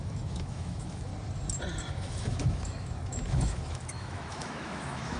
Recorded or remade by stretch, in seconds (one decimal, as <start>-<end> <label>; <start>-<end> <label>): 0.0-1.1 remade; 1.1-1.9 recorded; 1.9-5.2 remade